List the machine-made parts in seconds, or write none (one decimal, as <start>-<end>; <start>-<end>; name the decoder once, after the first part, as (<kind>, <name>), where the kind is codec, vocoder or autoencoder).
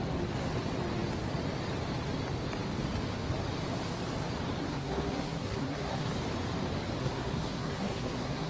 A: 4.6-6.1 (codec, SNAC); 7.0-8.5